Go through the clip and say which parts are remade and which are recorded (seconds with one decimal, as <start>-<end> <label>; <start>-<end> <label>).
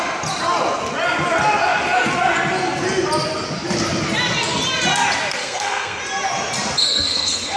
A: 0.0-5.4 recorded; 5.4-6.0 remade; 6.0-6.8 recorded; 6.8-7.6 remade